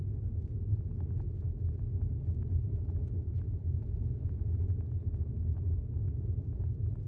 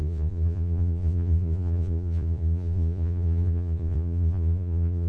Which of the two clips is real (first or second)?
first